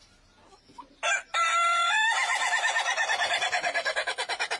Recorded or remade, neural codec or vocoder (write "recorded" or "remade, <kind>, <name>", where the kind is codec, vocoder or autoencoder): recorded